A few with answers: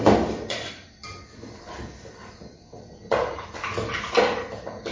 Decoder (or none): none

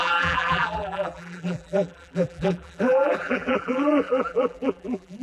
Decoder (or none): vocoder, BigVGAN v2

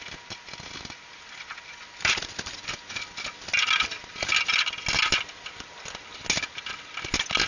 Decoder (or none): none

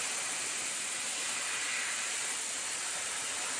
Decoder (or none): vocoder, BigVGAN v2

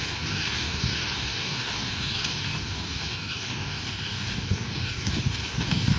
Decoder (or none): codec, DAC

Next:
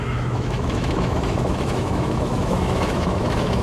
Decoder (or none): autoencoder, DAC-VAE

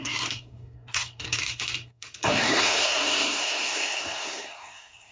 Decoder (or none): codec, SNAC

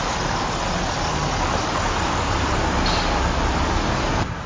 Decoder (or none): none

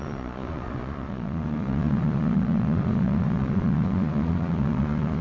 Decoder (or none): vocoder, Vocos